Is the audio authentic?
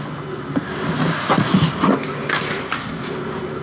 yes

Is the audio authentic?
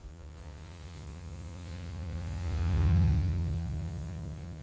no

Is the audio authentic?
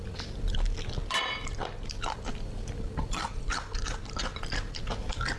yes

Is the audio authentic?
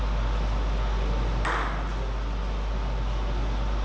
yes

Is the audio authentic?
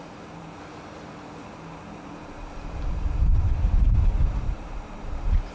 no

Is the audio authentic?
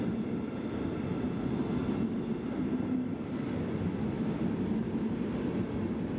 yes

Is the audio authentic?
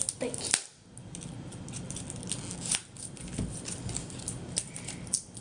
yes